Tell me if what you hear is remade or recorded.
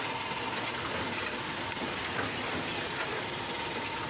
recorded